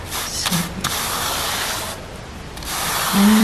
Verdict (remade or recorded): remade